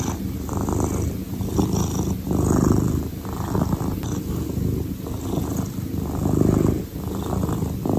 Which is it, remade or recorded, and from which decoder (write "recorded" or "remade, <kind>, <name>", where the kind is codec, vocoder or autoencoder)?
recorded